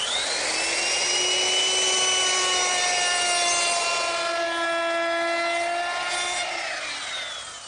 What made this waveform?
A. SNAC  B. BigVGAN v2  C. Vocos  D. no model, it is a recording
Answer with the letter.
D